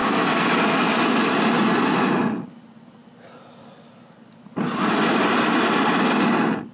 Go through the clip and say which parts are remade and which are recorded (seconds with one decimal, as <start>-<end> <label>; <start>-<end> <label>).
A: 0.0-0.5 remade; 0.5-6.7 recorded